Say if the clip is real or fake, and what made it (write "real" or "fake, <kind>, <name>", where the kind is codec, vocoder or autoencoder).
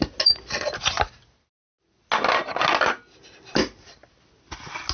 real